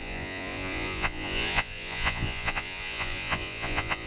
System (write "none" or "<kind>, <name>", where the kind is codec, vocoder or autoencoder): vocoder, Vocos